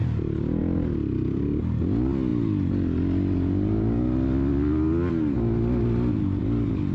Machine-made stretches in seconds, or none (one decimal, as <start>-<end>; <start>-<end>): none